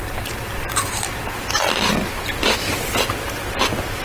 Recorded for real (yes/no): yes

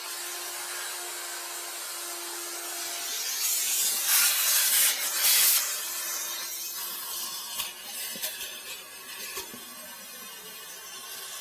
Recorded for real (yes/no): yes